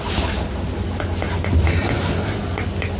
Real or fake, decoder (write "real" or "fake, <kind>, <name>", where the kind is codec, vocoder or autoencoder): real